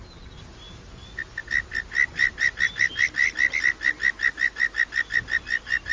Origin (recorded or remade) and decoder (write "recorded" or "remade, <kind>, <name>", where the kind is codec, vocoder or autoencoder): recorded